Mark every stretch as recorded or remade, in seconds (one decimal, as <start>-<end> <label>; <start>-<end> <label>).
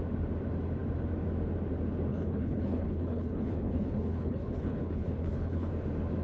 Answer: 0.0-2.1 recorded; 2.1-5.7 remade; 5.7-6.2 recorded